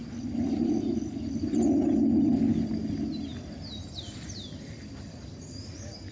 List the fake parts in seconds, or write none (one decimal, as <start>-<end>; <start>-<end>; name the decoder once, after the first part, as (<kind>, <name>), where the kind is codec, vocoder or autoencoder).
none